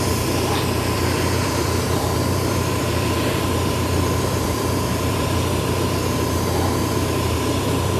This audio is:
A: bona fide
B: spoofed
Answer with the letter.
B